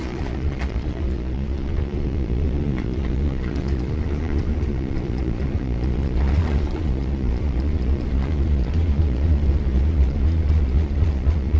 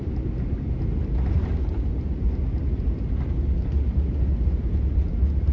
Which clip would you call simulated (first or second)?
first